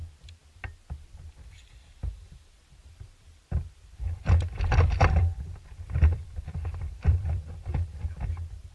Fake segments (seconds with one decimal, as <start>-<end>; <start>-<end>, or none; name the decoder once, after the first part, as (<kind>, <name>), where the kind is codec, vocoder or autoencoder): 2.8-7.5 (vocoder, BigVGAN v2)